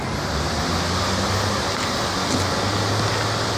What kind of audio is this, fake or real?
real